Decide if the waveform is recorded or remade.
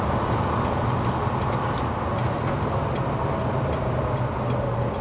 recorded